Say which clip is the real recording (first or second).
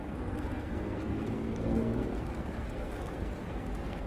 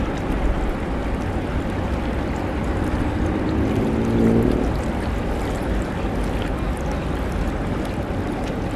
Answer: second